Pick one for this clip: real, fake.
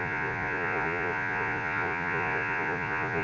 fake